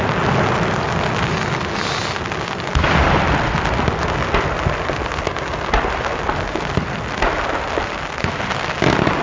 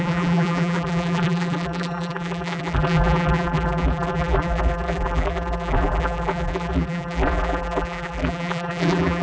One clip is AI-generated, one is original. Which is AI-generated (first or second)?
second